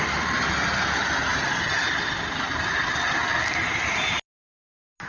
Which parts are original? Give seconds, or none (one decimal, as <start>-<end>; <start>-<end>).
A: 0.0-5.1